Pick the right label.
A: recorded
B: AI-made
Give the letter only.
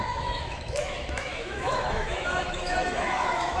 B